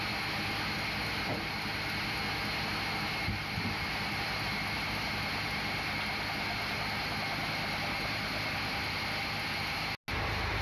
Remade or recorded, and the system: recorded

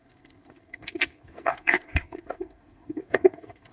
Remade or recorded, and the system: remade, codec, SNAC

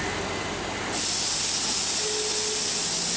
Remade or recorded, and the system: recorded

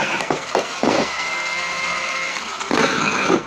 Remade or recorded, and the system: remade, codec, SNAC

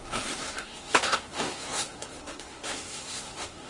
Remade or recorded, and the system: remade, codec, SNAC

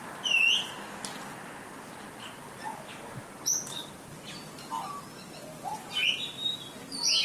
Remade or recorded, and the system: recorded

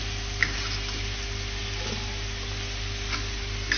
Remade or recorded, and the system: recorded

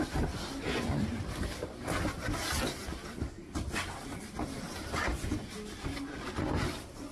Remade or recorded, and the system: recorded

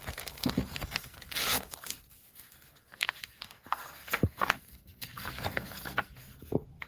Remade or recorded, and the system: remade, codec, SNAC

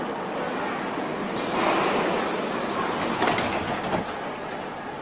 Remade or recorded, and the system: recorded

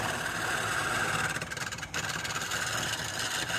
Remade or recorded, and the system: recorded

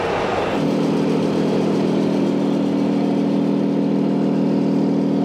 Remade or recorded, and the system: recorded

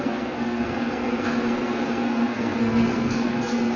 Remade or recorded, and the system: remade, codec, SNAC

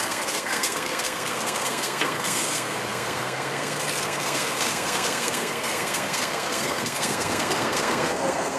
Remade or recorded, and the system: remade, codec, SNAC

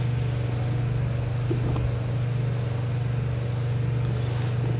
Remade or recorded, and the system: recorded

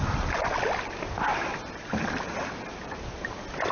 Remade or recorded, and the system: recorded